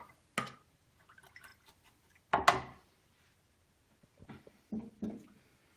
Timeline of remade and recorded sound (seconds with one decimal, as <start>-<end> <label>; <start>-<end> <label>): 0.0-5.8 recorded